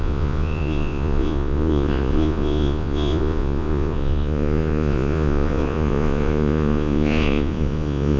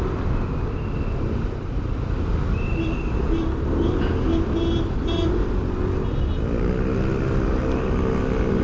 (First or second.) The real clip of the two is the second